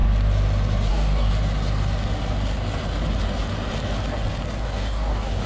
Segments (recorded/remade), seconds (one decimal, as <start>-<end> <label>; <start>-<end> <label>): 0.0-0.9 recorded; 0.9-1.3 remade; 1.3-4.6 recorded; 4.6-5.5 remade